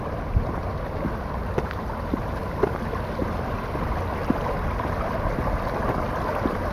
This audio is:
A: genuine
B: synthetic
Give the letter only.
A